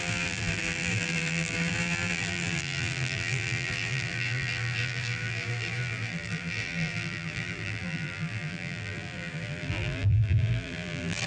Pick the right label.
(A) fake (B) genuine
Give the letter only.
A